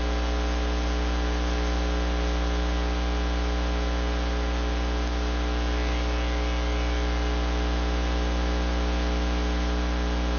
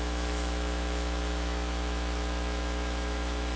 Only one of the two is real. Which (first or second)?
first